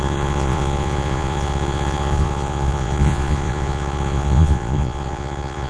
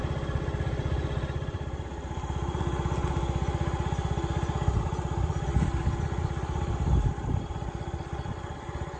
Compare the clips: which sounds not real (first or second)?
first